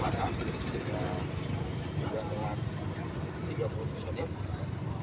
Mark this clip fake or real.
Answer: fake